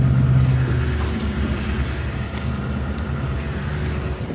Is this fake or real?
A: real